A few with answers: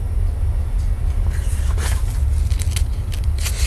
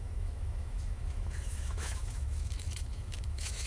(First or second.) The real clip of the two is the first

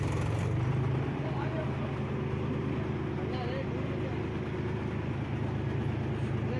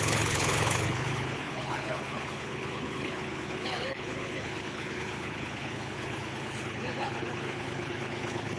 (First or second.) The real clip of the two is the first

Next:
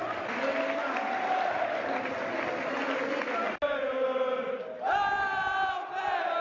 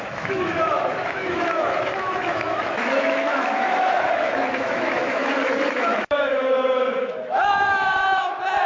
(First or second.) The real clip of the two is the first